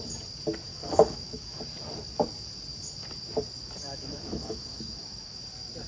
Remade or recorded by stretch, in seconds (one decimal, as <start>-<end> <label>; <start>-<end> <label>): 0.0-0.7 recorded; 0.7-1.6 remade; 1.6-3.9 recorded; 3.9-5.4 remade; 5.4-5.9 recorded